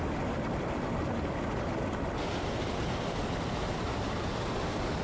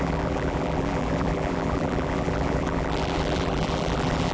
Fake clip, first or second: second